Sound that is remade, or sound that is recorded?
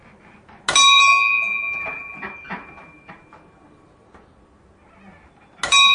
recorded